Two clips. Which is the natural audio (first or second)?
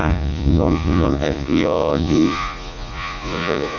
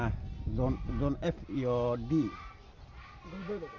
second